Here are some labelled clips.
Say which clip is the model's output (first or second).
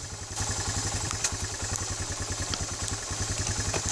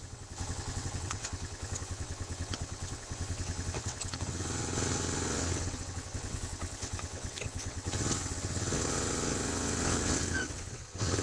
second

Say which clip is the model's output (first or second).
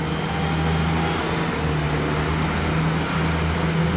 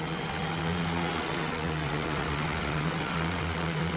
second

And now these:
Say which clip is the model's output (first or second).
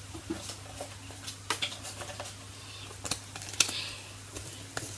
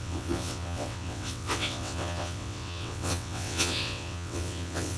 second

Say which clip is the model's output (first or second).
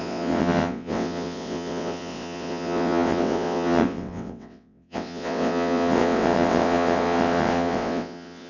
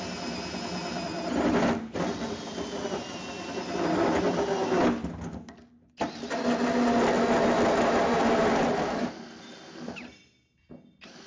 first